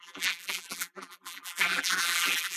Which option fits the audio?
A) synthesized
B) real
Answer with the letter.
A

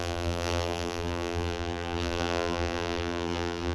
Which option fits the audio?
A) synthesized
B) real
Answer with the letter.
A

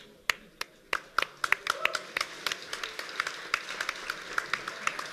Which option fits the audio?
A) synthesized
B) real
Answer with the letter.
B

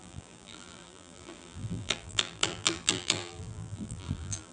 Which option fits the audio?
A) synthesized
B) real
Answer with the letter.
A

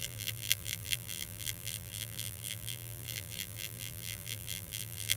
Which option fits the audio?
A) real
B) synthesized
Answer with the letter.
B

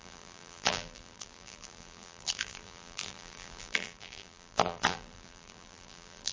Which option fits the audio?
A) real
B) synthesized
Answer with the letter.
B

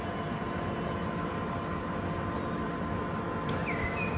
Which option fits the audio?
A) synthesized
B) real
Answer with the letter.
B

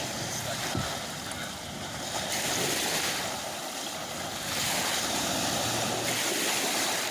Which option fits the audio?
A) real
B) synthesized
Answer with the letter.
A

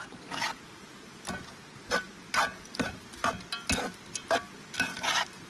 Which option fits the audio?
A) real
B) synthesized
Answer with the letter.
A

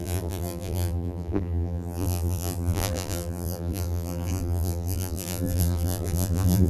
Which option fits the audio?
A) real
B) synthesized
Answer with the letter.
B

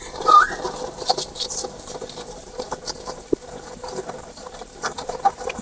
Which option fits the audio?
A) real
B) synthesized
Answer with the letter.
B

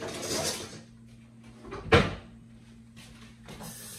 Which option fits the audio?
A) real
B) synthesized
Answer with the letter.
A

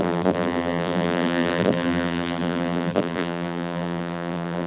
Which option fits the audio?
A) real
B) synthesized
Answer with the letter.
B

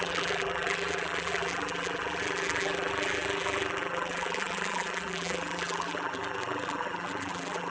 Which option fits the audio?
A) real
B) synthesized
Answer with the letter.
B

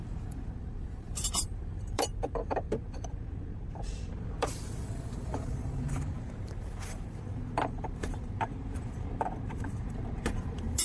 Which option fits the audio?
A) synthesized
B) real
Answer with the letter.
A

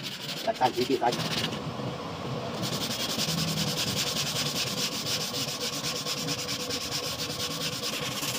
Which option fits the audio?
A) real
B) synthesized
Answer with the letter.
A